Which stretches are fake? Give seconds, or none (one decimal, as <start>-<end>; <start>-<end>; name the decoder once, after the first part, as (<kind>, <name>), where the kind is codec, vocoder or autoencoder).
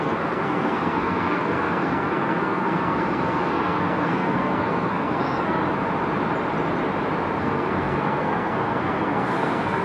0.0-5.6 (codec, SNAC); 7.4-9.8